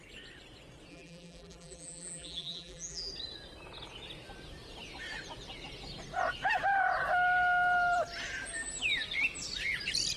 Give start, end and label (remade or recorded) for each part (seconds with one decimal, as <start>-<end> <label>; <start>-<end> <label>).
0.0-0.9 recorded; 0.9-3.1 remade; 3.1-10.2 recorded